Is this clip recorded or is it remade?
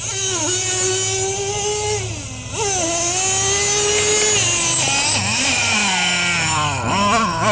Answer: recorded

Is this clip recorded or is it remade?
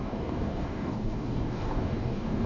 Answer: remade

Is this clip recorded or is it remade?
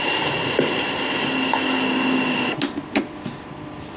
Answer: recorded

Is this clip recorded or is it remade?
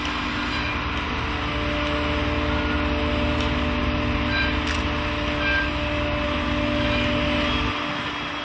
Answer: recorded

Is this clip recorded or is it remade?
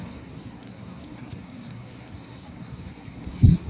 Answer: remade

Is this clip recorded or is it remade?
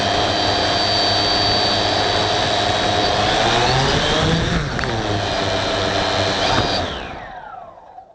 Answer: recorded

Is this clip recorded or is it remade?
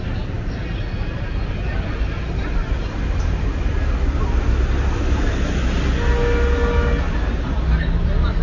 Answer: recorded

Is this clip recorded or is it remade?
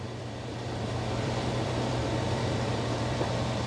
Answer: remade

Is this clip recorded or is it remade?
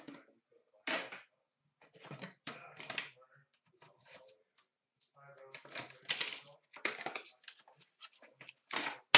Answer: recorded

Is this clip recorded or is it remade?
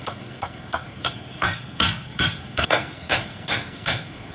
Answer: remade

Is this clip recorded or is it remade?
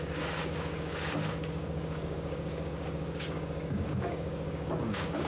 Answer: remade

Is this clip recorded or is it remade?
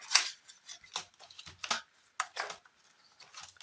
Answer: recorded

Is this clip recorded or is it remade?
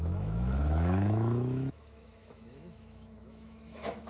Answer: remade